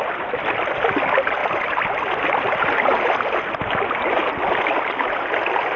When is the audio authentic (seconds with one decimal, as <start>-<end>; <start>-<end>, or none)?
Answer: 0.0-5.8